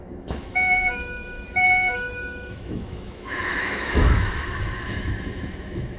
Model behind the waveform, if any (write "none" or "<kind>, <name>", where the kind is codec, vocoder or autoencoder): autoencoder, DAC-VAE